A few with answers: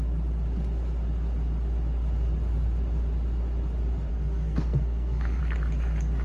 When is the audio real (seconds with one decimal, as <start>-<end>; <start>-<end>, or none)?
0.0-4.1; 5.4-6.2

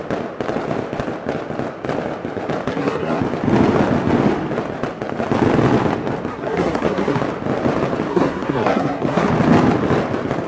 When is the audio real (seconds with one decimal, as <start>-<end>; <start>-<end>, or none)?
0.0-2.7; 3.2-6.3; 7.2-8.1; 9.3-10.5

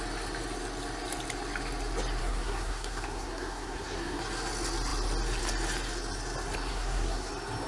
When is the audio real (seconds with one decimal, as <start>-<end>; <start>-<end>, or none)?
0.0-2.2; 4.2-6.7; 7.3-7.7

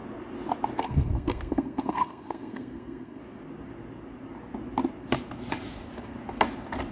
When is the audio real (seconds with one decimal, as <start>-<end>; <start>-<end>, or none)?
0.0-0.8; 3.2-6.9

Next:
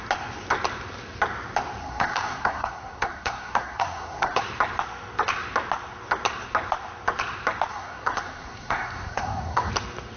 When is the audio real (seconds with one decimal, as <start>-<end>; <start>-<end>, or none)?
0.0-1.8; 4.4-7.7; 9.7-10.2

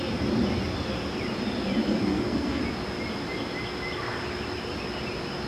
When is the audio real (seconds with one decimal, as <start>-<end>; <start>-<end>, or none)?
0.0-2.0; 2.6-5.5

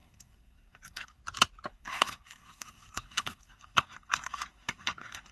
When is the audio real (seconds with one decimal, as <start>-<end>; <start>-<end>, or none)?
1.2-1.7

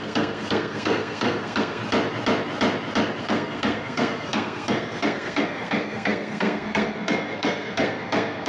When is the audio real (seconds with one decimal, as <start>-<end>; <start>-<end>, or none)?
1.8-3.2